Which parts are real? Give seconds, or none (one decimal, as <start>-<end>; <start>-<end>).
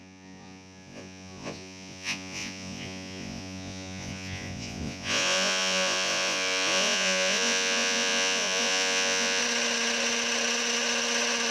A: 9.4-11.5